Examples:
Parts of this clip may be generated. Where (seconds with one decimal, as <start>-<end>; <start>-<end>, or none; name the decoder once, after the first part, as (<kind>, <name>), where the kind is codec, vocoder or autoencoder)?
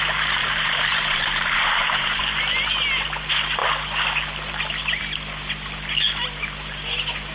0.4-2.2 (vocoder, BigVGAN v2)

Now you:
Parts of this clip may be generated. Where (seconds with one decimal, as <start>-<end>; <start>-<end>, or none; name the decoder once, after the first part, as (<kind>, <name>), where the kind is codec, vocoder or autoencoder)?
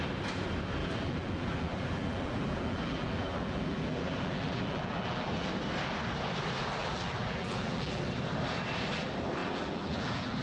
0.8-5.5 (vocoder, BigVGAN v2); 6.8-8.0; 9.4-10.4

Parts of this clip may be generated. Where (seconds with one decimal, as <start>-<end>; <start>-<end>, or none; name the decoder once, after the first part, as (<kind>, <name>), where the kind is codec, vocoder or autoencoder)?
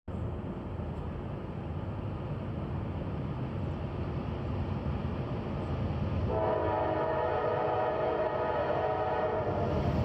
none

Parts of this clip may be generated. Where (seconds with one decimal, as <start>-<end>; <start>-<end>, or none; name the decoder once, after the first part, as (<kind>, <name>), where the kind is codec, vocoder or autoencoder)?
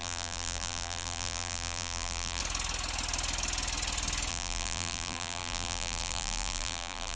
0.0-2.4 (vocoder, BigVGAN v2); 4.3-7.2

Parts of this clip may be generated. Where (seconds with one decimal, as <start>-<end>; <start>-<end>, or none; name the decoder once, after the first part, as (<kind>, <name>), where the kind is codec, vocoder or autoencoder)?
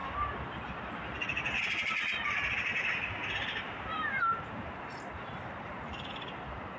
1.6-2.7 (vocoder, BigVGAN v2)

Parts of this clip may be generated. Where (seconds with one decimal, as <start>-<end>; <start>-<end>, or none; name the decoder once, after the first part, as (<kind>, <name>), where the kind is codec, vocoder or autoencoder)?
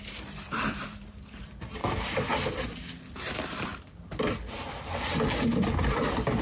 0.0-1.8 (vocoder, BigVGAN v2); 3.1-3.7; 5.9-6.4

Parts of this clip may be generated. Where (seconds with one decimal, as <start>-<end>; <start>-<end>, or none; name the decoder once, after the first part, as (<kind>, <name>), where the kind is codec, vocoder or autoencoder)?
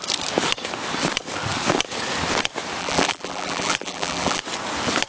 2.8-4.4 (vocoder, BigVGAN v2)